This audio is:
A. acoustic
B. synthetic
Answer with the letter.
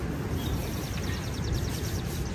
B